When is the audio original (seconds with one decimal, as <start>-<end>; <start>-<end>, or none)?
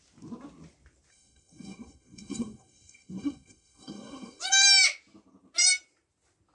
0.0-1.1; 4.4-6.5